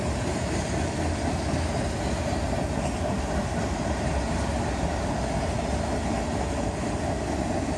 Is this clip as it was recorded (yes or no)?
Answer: yes